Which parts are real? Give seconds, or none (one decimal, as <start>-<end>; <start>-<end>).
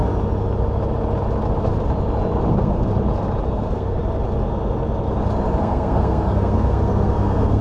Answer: 0.0-2.5; 2.9-3.5; 4.0-5.6